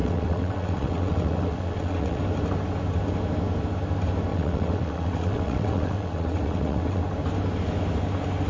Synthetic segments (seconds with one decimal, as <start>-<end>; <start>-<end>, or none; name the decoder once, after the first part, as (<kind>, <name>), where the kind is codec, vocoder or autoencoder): 0.0-2.2 (vocoder, WaveNeXt); 4.3-7.0